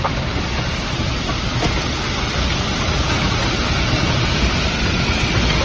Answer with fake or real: real